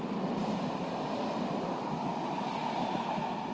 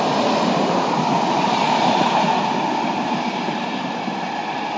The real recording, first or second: first